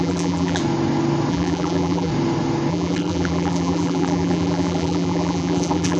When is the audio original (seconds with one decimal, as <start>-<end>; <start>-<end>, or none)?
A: 0.6-1.3; 2.1-2.7